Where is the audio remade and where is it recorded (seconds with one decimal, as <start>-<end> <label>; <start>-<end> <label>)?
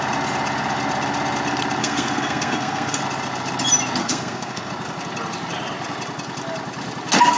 0.0-1.8 recorded; 1.8-3.0 remade; 3.0-4.0 recorded; 4.0-4.7 remade; 4.7-7.4 recorded